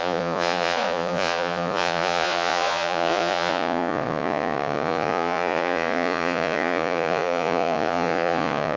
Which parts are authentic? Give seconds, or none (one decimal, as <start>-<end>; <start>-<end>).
none